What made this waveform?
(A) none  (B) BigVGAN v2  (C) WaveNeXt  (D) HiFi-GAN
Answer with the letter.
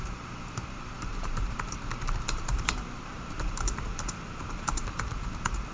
B